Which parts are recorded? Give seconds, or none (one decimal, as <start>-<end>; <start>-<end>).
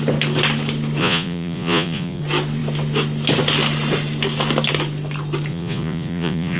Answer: 0.0-1.0; 2.2-5.5